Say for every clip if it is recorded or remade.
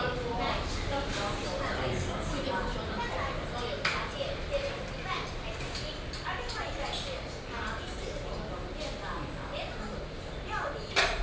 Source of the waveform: recorded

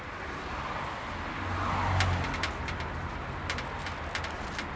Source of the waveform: recorded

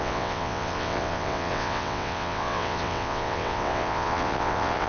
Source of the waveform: remade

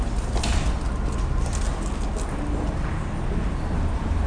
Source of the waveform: recorded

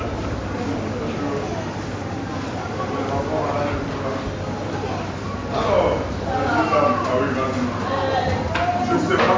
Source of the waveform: recorded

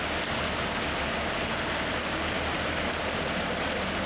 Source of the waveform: recorded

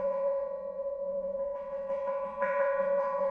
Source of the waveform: remade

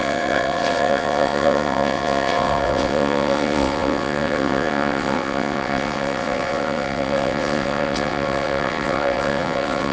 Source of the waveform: remade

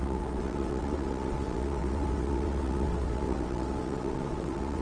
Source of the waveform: remade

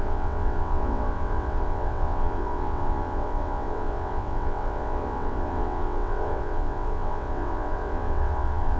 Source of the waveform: remade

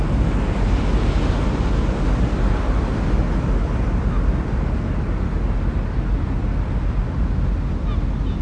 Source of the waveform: recorded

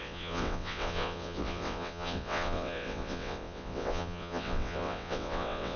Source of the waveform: remade